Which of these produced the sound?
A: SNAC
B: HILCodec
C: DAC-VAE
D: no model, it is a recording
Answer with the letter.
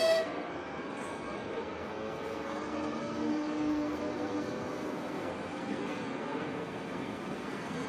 A